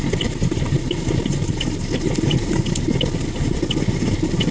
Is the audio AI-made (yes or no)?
no